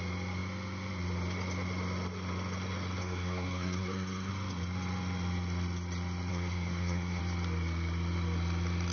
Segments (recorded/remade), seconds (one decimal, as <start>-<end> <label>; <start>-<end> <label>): 0.0-3.0 recorded; 3.0-4.3 remade; 4.3-6.3 recorded; 6.3-7.2 remade; 7.2-8.9 recorded